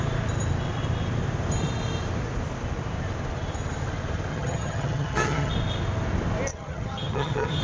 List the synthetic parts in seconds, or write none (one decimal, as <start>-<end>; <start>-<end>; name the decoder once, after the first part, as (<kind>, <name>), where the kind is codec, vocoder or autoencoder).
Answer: 4.3-5.5 (vocoder, HiFi-GAN); 6.5-7.6

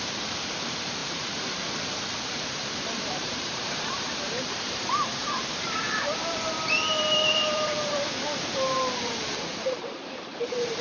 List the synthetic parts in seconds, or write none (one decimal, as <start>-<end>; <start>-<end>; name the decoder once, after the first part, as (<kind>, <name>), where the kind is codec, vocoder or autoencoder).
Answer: 0.0-10.8 (vocoder, BigVGAN v2)

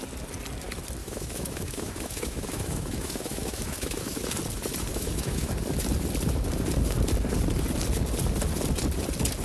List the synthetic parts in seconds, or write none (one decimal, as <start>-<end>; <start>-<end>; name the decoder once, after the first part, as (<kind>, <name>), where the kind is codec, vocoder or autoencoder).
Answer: 1.0-4.3 (autoencoder, DAC-VAE); 4.9-5.5

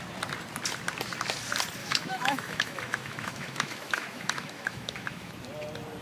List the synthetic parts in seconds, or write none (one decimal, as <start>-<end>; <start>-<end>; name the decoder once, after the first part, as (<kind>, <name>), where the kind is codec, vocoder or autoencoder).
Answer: 1.8-5.3 (autoencoder, DAC-VAE)

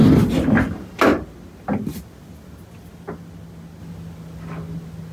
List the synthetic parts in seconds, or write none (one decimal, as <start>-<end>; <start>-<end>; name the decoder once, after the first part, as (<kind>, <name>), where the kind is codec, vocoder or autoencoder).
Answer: none

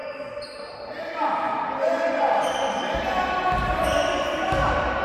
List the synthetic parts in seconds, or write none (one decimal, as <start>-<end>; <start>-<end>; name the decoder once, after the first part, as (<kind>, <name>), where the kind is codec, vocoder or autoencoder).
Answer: none

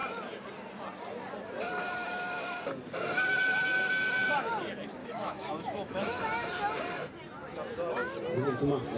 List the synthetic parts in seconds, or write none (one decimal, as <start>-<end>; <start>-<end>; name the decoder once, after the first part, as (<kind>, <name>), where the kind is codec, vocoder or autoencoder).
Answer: 5.0-6.2 (autoencoder, DAC-VAE)